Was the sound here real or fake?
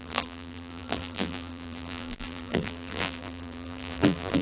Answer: fake